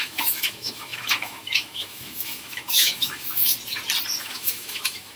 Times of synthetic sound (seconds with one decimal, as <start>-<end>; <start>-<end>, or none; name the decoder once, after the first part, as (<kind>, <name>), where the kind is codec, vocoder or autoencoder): 0.0-3.5 (autoencoder, DAC-VAE); 4.2-5.2